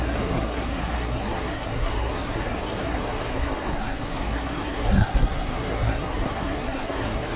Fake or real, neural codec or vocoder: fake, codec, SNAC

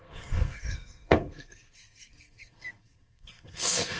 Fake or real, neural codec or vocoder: fake, codec, SNAC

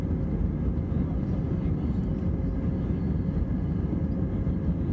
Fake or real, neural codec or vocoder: real